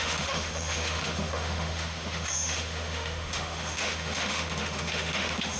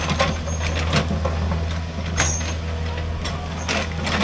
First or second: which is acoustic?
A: second